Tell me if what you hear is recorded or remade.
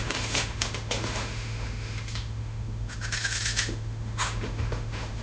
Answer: remade